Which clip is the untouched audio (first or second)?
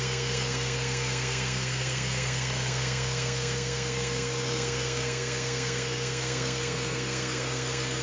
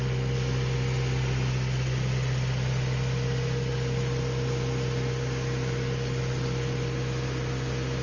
second